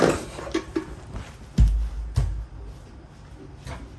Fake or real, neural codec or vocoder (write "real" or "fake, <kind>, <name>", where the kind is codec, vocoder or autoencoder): real